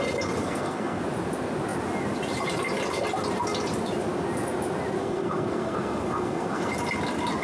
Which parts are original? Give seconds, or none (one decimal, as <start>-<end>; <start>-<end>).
0.0-0.4; 1.0-5.0; 6.7-7.4